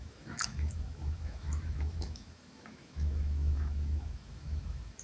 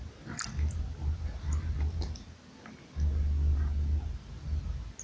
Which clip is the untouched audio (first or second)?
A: second